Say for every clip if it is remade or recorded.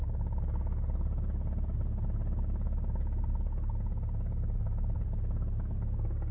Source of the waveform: recorded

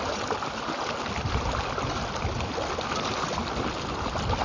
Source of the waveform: recorded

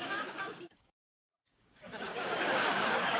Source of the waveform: remade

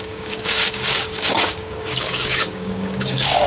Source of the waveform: remade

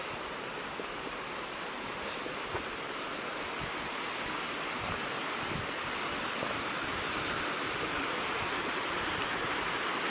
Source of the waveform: recorded